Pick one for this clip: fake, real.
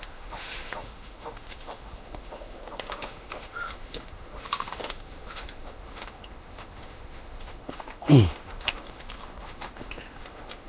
fake